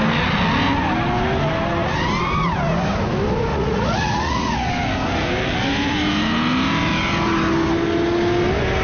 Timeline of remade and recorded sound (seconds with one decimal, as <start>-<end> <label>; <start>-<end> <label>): 0.0-3.5 recorded; 3.5-4.7 remade; 4.7-8.8 recorded

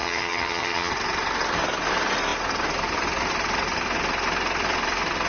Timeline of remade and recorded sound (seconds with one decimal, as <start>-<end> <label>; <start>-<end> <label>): 0.0-0.9 remade; 0.9-5.3 recorded

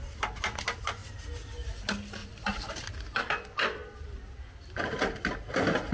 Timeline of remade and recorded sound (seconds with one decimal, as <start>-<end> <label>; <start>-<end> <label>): 0.0-2.2 recorded; 2.2-2.9 remade; 2.9-5.9 recorded